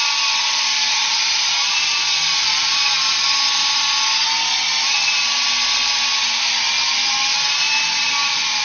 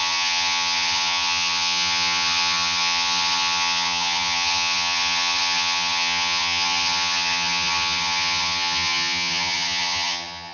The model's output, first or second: second